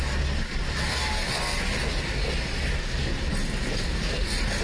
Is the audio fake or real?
real